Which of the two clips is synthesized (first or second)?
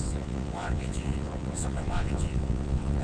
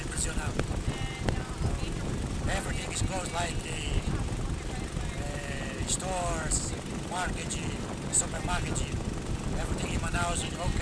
first